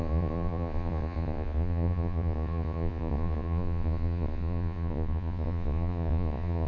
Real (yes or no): no